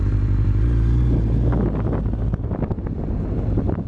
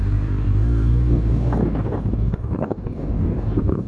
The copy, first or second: second